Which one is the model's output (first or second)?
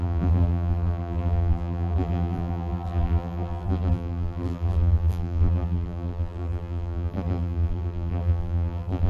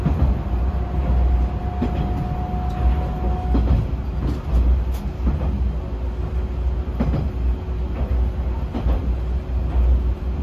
first